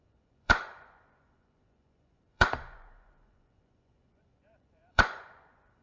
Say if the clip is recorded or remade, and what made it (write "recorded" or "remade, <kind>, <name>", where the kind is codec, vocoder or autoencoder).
remade, vocoder, Vocos